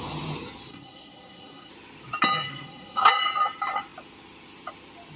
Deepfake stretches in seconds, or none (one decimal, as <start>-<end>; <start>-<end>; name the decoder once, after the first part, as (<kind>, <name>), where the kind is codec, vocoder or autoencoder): 0.7-1.7 (codec, SNAC); 2.5-3.1